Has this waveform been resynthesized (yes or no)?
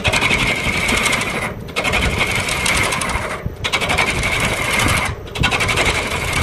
no